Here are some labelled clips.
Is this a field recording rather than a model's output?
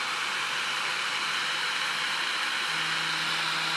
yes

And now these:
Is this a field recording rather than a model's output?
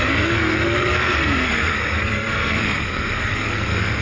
no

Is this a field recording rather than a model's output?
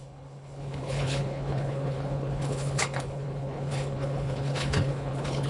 no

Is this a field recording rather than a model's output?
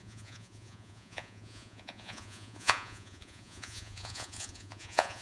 no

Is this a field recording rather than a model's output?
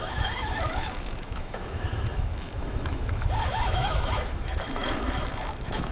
no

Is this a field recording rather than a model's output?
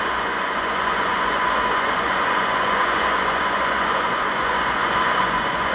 no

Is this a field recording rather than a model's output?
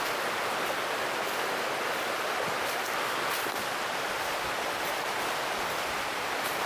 yes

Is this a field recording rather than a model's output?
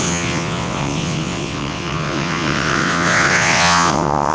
no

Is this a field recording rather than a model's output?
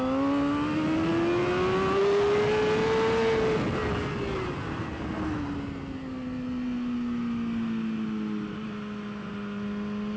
yes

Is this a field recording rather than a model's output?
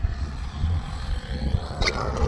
no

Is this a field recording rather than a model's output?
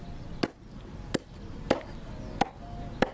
yes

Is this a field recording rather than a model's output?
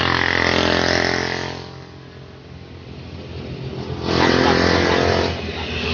yes